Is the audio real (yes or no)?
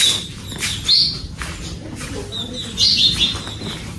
yes